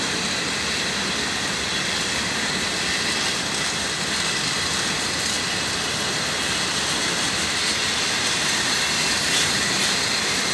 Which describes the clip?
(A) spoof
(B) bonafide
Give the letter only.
B